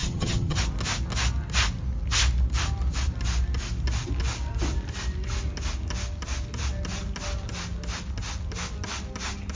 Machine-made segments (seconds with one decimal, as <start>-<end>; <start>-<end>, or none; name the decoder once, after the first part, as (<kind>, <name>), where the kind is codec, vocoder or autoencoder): 0.0-0.6 (vocoder, HiFi-GAN)